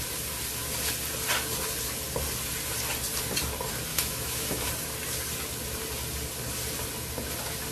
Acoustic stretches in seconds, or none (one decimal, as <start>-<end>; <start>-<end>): 0.0-3.9; 4.7-7.7